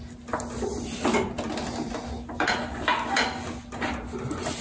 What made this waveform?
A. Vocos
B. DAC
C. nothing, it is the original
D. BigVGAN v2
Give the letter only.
C